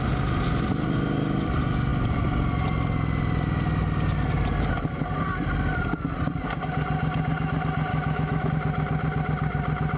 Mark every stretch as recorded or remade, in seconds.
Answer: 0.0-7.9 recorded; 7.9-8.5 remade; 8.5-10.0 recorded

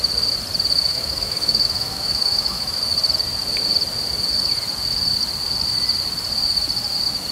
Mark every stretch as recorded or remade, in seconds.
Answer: 0.0-0.9 recorded; 0.9-2.8 remade; 2.8-7.3 recorded

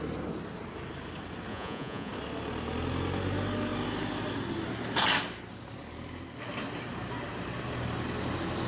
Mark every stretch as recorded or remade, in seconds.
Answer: 0.0-1.5 recorded; 1.5-2.1 remade; 2.1-8.7 recorded

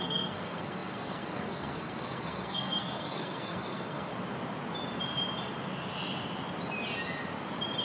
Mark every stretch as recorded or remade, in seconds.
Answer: 0.0-4.1 remade; 4.1-7.8 recorded